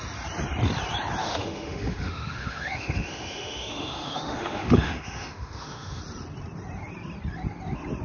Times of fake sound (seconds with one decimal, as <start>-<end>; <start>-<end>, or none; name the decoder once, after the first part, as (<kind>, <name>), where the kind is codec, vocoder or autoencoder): 1.2-6.0 (autoencoder, DAC-VAE)